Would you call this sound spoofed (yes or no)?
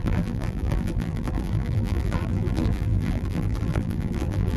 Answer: yes